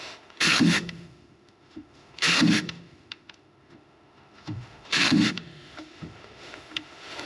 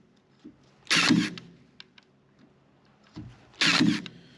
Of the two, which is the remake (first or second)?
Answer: first